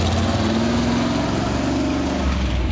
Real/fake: real